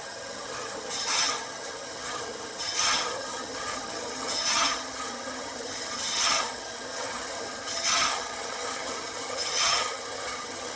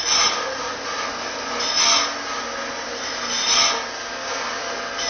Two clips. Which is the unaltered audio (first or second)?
second